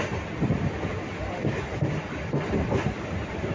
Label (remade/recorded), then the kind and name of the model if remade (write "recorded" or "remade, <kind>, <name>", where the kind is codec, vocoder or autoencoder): recorded